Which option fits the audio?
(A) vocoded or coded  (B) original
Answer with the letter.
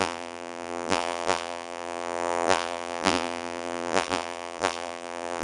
A